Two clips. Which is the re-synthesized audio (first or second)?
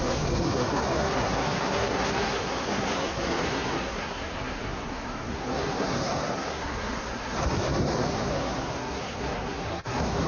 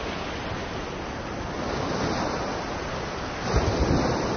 first